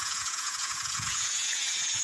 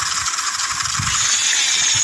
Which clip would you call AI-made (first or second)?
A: first